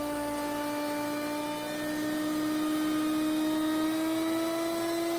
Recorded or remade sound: recorded